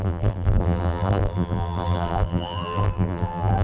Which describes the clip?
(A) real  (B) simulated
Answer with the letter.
B